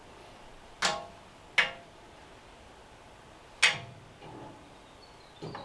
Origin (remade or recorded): recorded